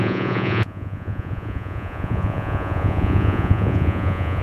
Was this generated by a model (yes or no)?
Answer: yes